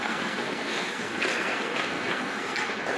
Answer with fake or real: fake